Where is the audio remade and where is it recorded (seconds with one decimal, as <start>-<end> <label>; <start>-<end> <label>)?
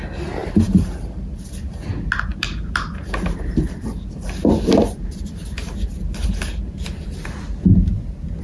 0.0-0.4 recorded; 0.4-1.8 remade; 1.8-2.3 recorded; 2.3-7.3 remade; 7.3-8.4 recorded